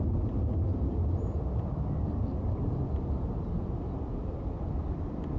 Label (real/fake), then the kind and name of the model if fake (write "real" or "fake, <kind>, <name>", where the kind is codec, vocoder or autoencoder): real